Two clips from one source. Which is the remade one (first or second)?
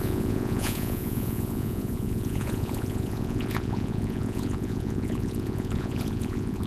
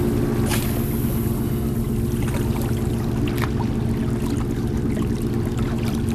first